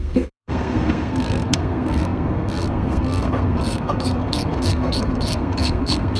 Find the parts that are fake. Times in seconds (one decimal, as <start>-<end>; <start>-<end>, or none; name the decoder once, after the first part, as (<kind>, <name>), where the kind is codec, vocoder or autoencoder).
0.0-6.2 (codec, SNAC)

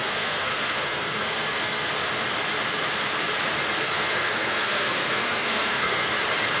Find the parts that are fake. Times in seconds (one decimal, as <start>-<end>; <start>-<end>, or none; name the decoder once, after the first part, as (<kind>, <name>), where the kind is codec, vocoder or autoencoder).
0.0-1.9 (codec, SNAC); 3.8-6.1

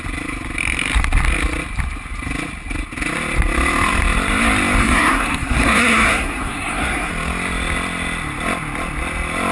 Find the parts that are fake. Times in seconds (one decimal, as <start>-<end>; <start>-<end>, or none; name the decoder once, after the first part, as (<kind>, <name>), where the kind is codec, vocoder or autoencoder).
4.8-7.1 (codec, SNAC)

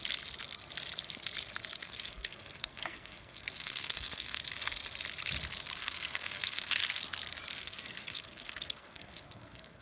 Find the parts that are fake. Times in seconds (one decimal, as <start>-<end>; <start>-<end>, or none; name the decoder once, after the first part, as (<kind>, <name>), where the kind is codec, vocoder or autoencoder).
1.8-4.4 (codec, SNAC); 5.8-7.0; 7.5-9.8

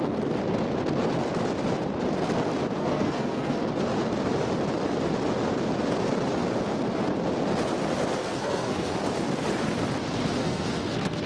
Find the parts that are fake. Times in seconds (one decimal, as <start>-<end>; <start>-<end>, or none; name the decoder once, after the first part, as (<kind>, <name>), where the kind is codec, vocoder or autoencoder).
2.8-3.6 (codec, SNAC); 8.2-8.9; 10.4-11.3

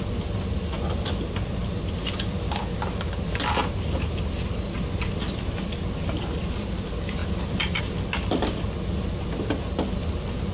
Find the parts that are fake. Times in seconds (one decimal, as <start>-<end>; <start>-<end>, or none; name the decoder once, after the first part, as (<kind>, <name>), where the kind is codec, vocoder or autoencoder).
none

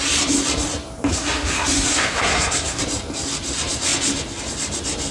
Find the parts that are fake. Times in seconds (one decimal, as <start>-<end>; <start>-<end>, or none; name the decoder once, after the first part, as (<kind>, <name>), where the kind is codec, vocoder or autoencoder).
1.1-2.8 (codec, SNAC)